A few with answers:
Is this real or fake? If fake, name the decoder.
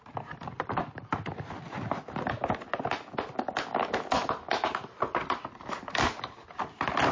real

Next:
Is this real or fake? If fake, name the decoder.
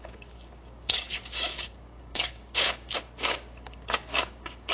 fake, codec, DAC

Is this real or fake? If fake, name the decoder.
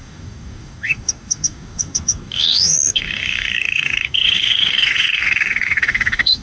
fake, codec, DAC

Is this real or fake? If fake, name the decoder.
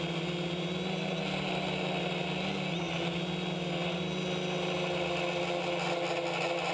real